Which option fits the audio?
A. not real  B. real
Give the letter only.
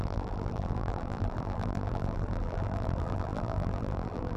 A